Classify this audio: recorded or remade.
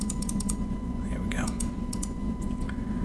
remade